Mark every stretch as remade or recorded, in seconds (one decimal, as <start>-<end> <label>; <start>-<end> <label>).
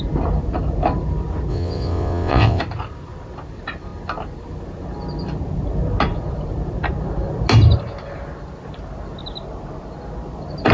0.0-1.5 recorded; 1.5-2.6 remade; 2.6-10.7 recorded